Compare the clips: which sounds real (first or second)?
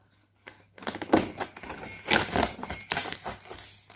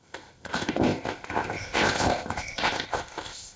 first